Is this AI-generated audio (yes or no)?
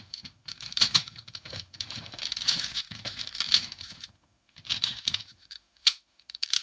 yes